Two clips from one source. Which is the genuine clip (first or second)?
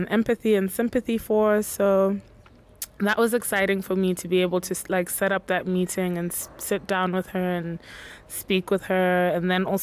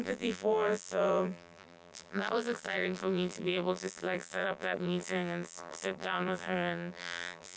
first